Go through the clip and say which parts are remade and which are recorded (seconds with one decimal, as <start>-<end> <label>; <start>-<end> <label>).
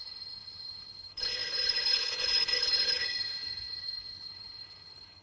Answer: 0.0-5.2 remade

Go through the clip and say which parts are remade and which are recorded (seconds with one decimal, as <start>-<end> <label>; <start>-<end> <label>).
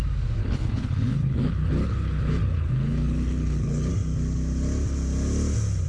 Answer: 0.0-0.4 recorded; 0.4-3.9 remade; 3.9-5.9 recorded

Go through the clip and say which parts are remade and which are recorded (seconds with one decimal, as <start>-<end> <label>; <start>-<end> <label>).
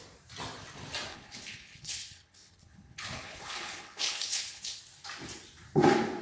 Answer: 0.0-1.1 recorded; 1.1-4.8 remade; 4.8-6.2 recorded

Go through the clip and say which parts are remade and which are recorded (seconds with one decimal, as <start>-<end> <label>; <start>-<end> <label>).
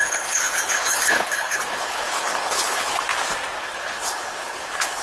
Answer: 0.0-3.0 remade; 3.0-3.6 recorded; 3.6-5.0 remade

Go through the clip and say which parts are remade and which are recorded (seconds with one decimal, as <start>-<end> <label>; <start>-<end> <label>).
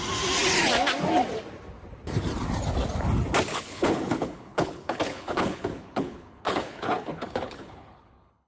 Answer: 0.0-3.5 recorded; 3.5-8.5 remade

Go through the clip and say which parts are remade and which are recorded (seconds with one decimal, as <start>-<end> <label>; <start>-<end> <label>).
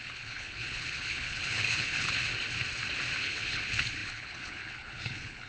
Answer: 0.0-2.3 remade; 2.3-3.2 recorded; 3.2-5.5 remade